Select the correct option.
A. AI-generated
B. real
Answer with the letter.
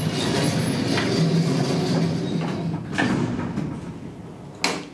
B